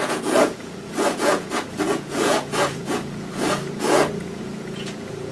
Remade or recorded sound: remade